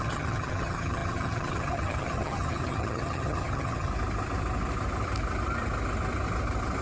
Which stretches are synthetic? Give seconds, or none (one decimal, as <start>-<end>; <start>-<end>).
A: 0.0-3.9